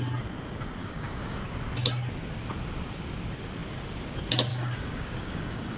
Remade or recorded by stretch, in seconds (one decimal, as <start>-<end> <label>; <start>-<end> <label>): 0.0-0.8 recorded; 0.8-1.4 remade; 1.4-4.5 recorded; 4.5-5.8 remade